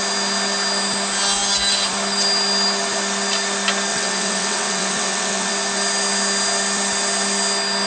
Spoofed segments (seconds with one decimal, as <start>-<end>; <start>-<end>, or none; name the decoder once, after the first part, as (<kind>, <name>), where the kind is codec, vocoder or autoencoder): 3.9-5.5 (vocoder, WaveNeXt)